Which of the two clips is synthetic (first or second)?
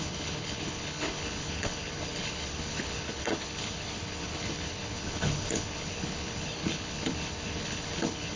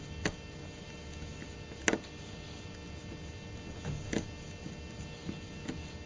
first